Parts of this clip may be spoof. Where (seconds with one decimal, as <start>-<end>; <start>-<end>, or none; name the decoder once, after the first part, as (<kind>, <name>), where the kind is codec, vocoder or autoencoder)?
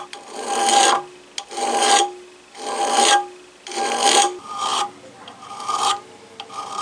none